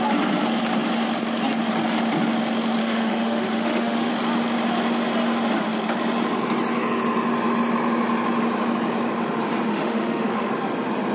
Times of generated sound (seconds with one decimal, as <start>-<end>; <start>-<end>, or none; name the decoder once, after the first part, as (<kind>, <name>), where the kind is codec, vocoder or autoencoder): 2.8-4.1 (autoencoder, DAC-VAE); 9.7-10.5